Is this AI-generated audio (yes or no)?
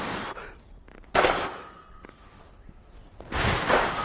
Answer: no